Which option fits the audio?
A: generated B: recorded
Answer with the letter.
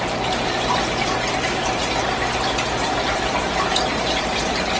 B